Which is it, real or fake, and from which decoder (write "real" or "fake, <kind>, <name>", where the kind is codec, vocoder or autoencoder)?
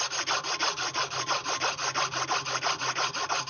real